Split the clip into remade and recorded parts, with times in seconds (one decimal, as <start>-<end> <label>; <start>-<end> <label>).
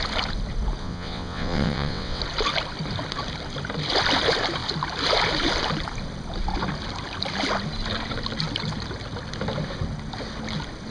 0.0-0.8 recorded; 0.8-2.2 remade; 2.2-10.9 recorded